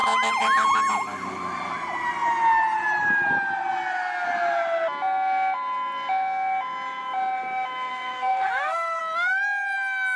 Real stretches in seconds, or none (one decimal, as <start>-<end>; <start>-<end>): 0.0-7.9; 9.0-10.2